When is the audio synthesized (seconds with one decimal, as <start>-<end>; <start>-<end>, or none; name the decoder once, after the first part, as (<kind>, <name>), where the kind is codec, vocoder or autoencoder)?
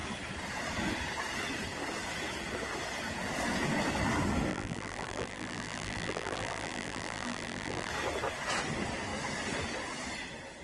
4.5-7.9 (vocoder, BigVGAN v2)